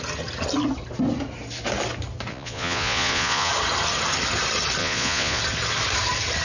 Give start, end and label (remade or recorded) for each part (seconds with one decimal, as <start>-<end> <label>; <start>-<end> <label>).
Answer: 0.0-2.3 recorded; 2.3-3.5 remade; 3.5-4.8 recorded; 4.8-5.4 remade; 5.4-6.4 recorded